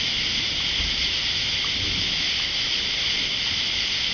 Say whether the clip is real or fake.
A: real